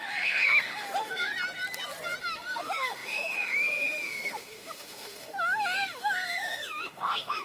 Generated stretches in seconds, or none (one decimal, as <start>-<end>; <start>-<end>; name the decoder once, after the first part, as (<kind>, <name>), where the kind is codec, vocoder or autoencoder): 0.0-1.3 (autoencoder, DAC-VAE); 2.2-7.4

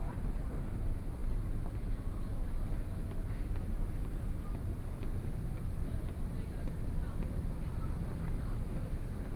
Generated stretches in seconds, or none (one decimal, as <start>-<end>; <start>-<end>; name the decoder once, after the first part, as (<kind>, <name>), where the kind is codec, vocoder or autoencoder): 0.0-2.3 (vocoder, BigVGAN v2); 7.2-8.0; 8.8-9.4

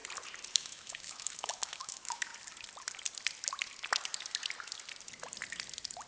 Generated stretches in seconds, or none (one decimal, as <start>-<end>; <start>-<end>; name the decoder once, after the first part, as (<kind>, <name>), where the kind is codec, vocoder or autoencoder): 0.5-2.3 (autoencoder, DAC-VAE)

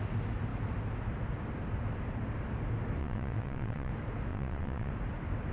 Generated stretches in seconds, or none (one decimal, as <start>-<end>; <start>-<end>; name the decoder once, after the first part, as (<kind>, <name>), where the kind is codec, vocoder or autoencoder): 3.0-3.9 (vocoder, WaveNeXt); 4.3-4.9

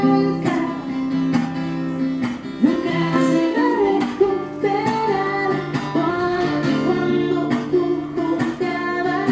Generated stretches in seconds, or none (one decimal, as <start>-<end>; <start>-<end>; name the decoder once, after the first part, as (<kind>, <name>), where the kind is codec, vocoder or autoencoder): 2.9-4.3 (autoencoder, DAC-VAE); 6.1-6.7

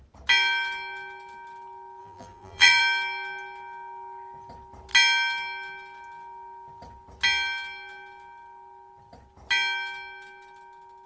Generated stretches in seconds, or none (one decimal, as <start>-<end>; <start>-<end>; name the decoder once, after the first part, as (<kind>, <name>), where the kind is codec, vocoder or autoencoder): 2.0-2.8 (vocoder, BigVGAN v2)

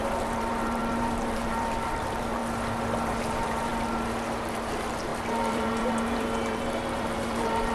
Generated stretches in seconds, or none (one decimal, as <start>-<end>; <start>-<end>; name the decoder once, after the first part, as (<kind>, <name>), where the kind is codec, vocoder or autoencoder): 0.0-2.4 (vocoder, BigVGAN v2); 3.2-3.7; 4.4-7.7

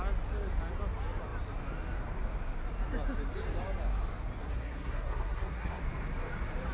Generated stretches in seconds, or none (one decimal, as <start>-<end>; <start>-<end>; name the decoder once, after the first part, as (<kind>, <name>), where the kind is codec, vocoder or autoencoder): 4.4-5.8 (codec, SNAC)